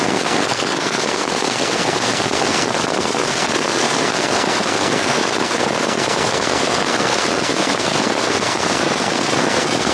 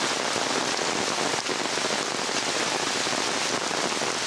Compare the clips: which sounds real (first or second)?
second